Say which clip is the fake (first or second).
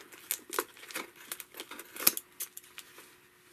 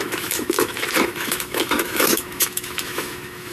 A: second